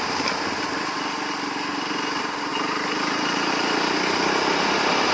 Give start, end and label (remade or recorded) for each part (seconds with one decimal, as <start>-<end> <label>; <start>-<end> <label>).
0.0-2.5 recorded; 2.5-3.5 remade; 3.5-5.1 recorded